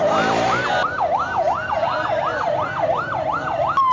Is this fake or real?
real